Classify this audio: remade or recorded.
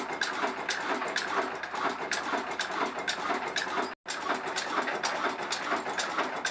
recorded